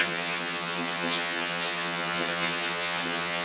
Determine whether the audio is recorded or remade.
remade